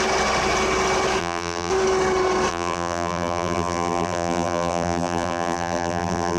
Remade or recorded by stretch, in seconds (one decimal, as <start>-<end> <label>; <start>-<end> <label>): 0.0-1.2 recorded; 1.2-1.7 remade; 1.7-2.5 recorded; 2.5-6.4 remade